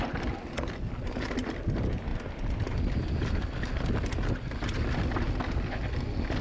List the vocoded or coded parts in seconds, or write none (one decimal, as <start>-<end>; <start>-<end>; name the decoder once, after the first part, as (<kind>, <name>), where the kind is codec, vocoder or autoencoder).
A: none